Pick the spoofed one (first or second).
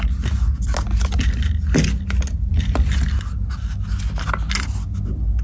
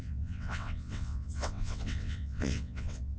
second